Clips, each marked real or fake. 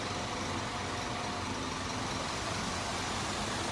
real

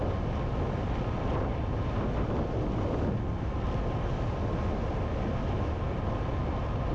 real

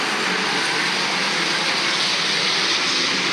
real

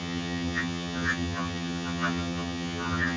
fake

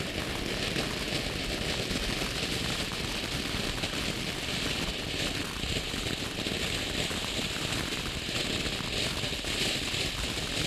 real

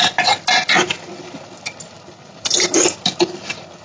real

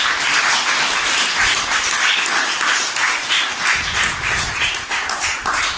real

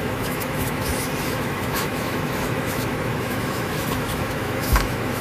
fake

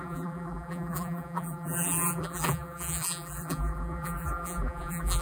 fake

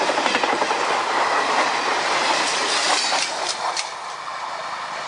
real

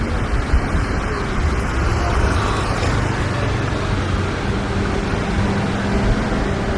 real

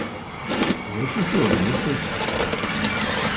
real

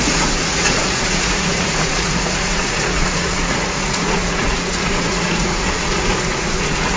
fake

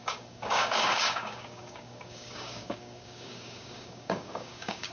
fake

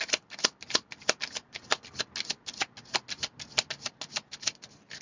real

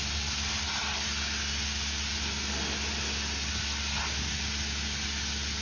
real